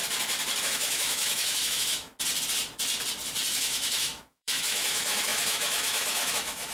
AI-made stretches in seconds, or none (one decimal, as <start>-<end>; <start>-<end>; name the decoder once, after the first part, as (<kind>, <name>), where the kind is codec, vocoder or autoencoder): 0.6-2.1 (autoencoder, DAC-VAE); 3.5-6.7